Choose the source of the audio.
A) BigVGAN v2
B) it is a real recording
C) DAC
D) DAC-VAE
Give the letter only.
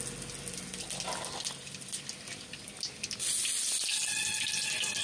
B